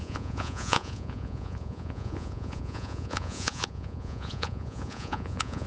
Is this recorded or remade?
remade